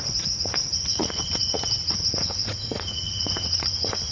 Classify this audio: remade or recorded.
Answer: remade